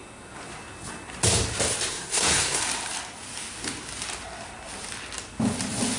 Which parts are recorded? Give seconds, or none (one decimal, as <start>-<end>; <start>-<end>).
0.0-1.9; 2.6-6.0